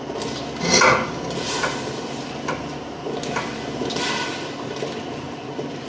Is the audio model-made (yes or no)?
no